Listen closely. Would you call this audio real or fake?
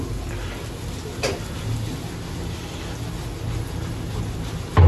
real